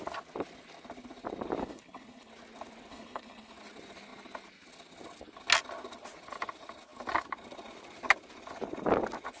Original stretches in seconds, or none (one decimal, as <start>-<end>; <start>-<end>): 0.0-1.6; 2.3-2.9; 3.5-9.4